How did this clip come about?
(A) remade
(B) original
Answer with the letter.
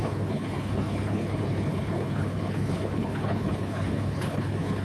A